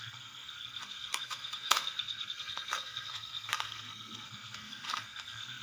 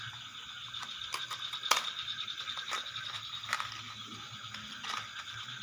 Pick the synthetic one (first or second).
first